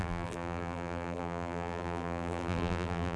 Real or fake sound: fake